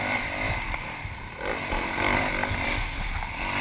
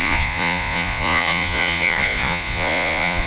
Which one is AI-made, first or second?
second